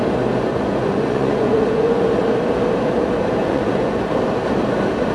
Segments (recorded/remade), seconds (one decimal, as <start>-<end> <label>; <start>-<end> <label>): 0.0-0.5 recorded; 0.5-2.0 remade; 2.0-3.4 recorded; 3.4-4.0 remade; 4.0-5.1 recorded